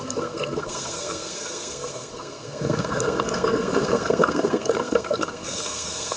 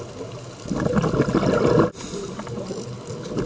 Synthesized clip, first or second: first